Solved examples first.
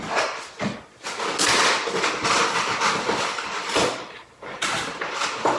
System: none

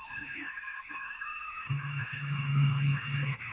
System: autoencoder, DAC-VAE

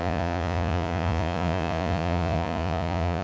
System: vocoder, Vocos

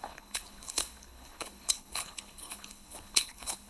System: codec, HILCodec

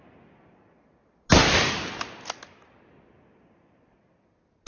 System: none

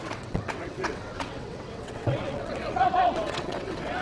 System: vocoder, WaveNeXt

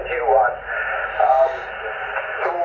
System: none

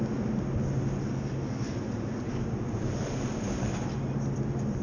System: none